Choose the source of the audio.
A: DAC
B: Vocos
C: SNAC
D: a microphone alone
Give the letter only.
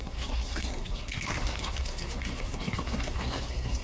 C